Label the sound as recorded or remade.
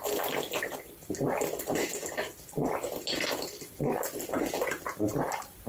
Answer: recorded